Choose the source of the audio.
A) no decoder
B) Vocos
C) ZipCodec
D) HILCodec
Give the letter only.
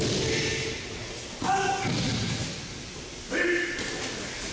A